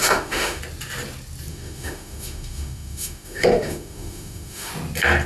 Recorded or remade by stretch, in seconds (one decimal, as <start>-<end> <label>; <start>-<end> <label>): 0.0-0.6 remade; 0.6-1.5 recorded; 1.5-4.7 remade; 4.7-5.3 recorded